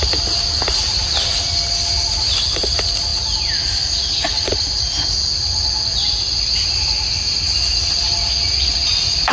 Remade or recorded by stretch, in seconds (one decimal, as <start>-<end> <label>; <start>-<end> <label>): 0.0-9.3 recorded